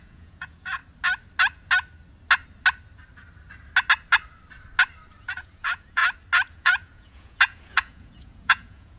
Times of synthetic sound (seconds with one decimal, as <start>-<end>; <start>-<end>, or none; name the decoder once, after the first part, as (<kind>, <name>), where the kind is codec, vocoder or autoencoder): 0.0-0.8 (vocoder, Vocos); 5.2-6.0; 6.5-9.0